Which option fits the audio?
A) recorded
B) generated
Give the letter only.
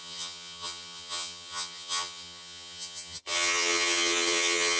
B